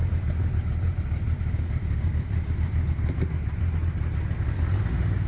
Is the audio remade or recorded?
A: recorded